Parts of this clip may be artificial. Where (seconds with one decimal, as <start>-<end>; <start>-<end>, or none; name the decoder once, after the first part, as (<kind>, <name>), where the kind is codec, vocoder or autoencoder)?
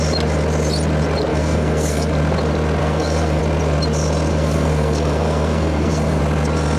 1.3-2.1 (codec, SNAC); 2.8-3.4; 4.3-6.2